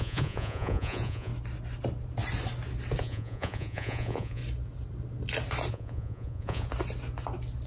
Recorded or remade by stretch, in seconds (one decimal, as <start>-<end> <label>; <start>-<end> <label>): 0.0-1.3 remade; 1.3-3.0 recorded; 3.0-4.4 remade; 4.4-5.7 recorded; 5.7-6.7 remade; 6.7-7.7 recorded